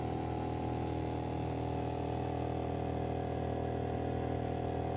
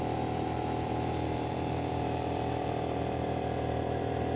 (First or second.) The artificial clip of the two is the second